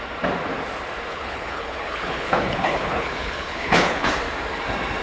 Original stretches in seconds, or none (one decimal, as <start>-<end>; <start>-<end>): 0.0-1.1; 4.1-5.0